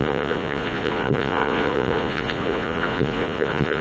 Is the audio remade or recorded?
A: remade